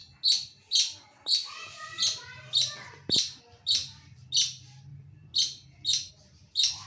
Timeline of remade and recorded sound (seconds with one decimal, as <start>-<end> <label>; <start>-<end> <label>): 0.0-6.9 recorded

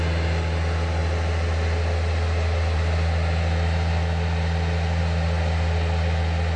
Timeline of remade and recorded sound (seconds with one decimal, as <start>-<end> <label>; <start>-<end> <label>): 0.0-6.6 recorded